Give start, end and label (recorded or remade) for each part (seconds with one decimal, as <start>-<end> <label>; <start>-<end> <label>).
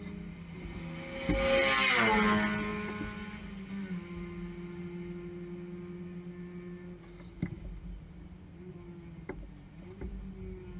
0.0-10.8 recorded